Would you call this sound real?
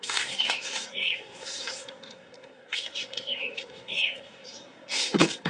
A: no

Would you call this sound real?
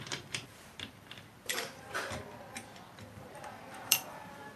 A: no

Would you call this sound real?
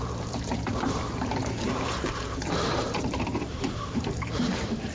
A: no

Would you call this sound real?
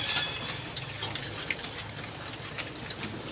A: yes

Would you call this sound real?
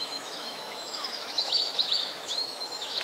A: no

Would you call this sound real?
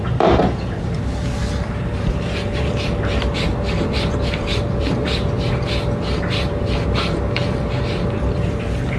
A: no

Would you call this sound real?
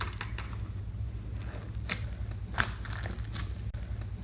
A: yes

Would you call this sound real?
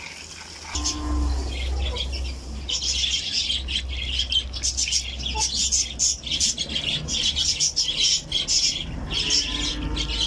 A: yes